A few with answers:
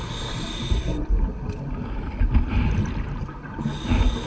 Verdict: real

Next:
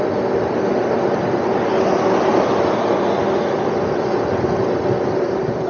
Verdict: real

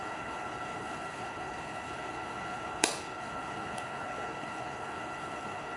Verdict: fake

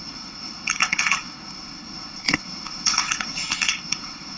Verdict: fake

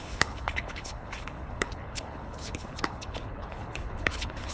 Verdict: fake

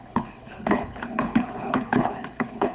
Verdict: fake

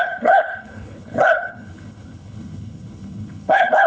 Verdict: fake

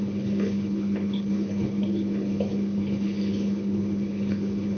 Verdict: fake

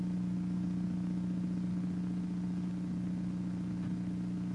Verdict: real